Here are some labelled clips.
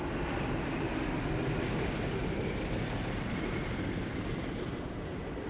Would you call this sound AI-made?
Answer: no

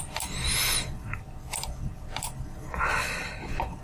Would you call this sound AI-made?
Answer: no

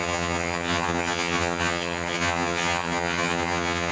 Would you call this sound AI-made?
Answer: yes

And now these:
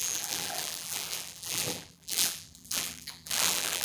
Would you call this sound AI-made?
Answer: yes